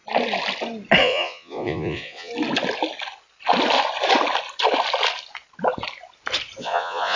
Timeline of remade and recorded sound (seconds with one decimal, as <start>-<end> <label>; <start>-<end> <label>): 0.0-1.0 recorded; 1.0-2.3 remade; 2.3-6.6 recorded; 6.6-7.2 remade